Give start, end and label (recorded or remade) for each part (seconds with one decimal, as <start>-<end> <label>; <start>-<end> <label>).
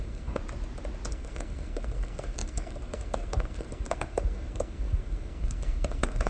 0.0-0.4 remade; 0.4-1.1 recorded; 1.1-6.3 remade